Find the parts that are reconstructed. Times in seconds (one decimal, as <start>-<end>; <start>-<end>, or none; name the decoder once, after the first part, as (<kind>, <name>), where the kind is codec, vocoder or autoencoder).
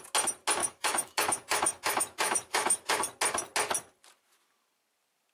0.6-3.0 (autoencoder, DAC-VAE)